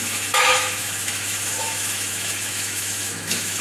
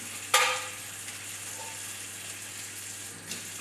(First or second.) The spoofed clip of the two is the first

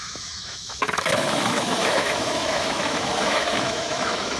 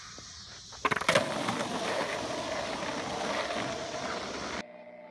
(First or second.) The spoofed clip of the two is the first